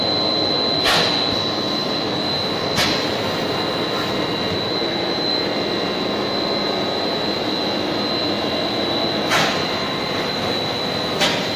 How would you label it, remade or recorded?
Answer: recorded